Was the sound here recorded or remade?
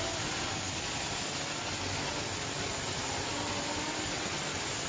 recorded